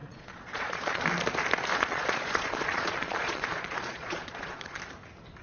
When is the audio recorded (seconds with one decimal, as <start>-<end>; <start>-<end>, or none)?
1.0-1.7; 4.8-5.4